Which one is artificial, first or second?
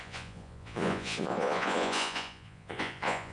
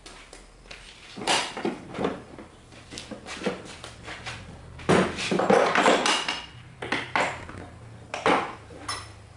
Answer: first